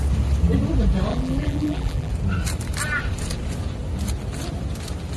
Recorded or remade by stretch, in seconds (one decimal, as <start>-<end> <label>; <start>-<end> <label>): 0.0-1.1 recorded; 1.1-2.1 remade; 2.1-5.2 recorded